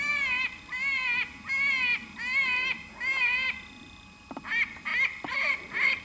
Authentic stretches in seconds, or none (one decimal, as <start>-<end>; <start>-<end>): 0.0-6.0